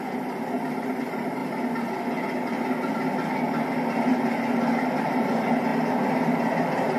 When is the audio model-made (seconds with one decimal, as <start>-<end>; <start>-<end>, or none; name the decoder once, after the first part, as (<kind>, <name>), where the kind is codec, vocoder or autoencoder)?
0.0-1.4 (vocoder, BigVGAN v2); 5.0-5.7; 6.6-7.0